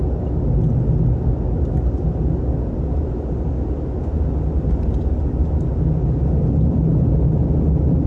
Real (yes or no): yes